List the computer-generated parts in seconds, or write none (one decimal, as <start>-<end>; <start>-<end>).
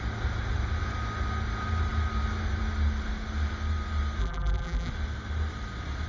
4.2-4.9